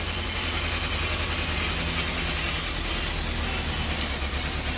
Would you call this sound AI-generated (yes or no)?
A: no